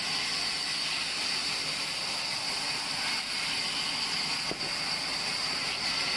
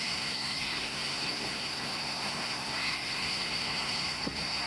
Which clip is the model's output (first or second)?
second